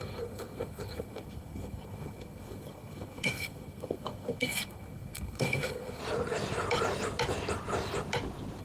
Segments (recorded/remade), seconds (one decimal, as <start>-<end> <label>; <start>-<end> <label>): 0.0-6.0 remade; 6.0-8.6 recorded